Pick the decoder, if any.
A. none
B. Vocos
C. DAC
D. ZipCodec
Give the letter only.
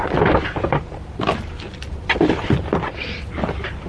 A